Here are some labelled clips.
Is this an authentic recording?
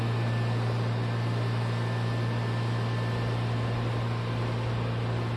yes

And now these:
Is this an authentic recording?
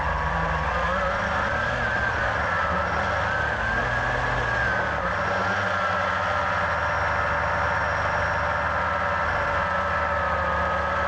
yes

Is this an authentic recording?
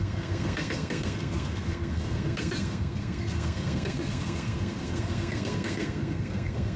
no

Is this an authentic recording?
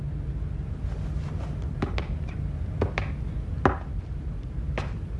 yes